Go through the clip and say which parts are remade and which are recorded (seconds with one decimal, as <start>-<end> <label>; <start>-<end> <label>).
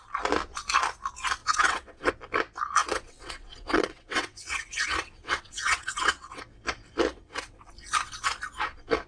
0.0-1.4 recorded; 1.4-2.1 remade; 2.1-2.8 recorded; 2.8-6.4 remade; 6.4-7.1 recorded; 7.1-7.7 remade; 7.7-9.1 recorded